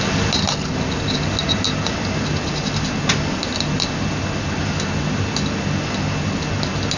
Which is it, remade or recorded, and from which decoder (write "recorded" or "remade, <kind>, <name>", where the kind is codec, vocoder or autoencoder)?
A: recorded